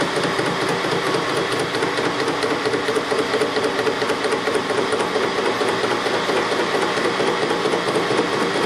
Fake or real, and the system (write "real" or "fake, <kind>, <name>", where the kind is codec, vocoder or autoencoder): real